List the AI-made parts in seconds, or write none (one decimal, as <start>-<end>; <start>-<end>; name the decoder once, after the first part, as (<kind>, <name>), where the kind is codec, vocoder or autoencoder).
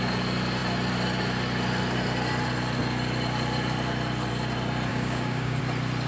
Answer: 4.9-5.6 (codec, DAC)